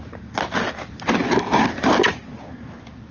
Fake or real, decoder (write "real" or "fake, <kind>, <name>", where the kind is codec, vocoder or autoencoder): real